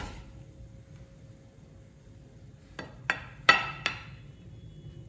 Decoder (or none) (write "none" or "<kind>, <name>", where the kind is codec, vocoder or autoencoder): none